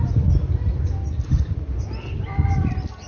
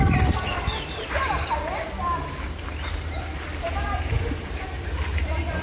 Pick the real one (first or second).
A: first